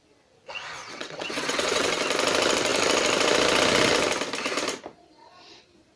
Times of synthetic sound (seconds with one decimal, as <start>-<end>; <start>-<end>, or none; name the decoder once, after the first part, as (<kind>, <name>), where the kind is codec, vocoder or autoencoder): 0.8-2.0 (vocoder, WaveNeXt)